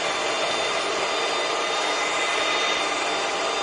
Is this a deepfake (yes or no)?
no